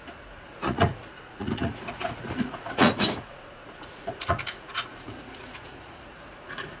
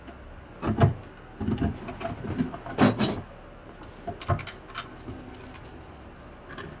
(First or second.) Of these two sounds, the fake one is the first